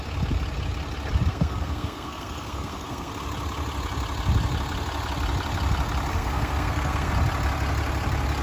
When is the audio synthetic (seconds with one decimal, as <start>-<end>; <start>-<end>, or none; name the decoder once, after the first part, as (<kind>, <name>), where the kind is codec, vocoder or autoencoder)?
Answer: 1.3-3.1 (codec, SNAC); 6.1-7.1